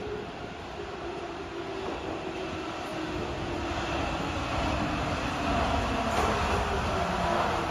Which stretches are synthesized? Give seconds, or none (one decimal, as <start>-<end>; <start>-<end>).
none

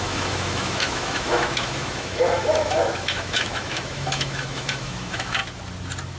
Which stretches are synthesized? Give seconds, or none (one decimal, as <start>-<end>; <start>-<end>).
0.0-5.4

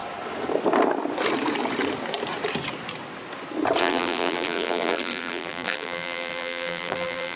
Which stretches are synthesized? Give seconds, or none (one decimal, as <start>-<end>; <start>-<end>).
3.8-7.4

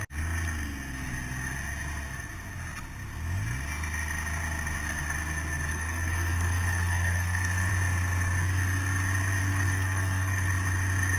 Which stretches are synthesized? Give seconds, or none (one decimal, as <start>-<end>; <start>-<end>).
5.7-7.7; 9.4-10.5

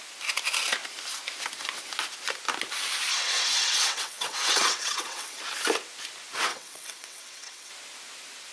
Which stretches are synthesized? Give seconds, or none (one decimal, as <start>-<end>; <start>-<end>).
3.1-5.4; 6.5-7.7